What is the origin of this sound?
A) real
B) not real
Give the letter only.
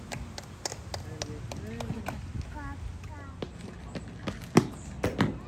A